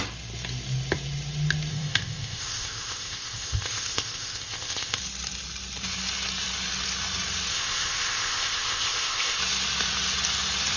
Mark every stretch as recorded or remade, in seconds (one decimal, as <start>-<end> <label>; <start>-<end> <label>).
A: 0.0-1.7 recorded; 1.7-5.0 remade; 5.0-7.5 recorded; 7.5-9.4 remade; 9.4-10.8 recorded